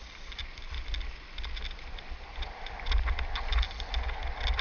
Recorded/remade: recorded